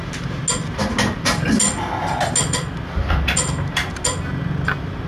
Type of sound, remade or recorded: recorded